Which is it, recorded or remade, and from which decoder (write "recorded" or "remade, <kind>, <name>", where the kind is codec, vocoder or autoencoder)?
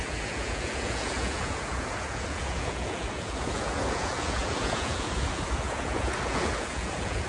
remade, vocoder, Vocos